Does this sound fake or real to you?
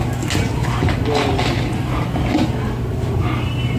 real